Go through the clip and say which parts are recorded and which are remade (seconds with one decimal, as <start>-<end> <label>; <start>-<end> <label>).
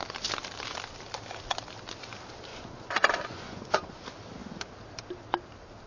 0.0-2.5 recorded; 2.5-4.0 remade; 4.0-5.9 recorded